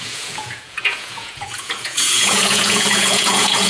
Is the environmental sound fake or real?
fake